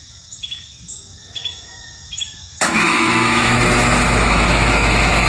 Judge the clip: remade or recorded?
remade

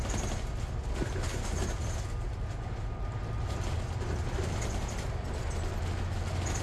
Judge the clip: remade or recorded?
recorded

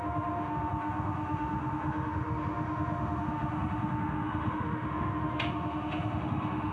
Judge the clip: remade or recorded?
remade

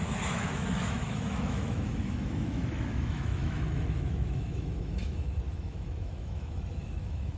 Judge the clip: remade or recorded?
remade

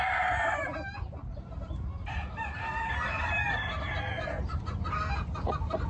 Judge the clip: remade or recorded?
recorded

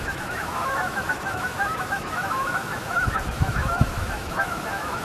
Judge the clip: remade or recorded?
remade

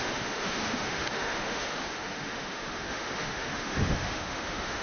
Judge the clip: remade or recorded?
remade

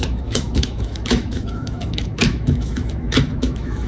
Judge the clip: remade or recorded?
remade